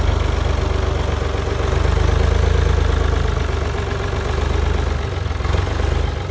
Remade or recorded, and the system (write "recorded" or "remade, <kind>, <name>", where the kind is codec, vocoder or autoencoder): recorded